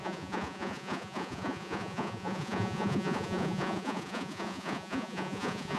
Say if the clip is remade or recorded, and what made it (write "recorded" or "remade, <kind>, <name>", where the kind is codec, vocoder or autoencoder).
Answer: remade, vocoder, Vocos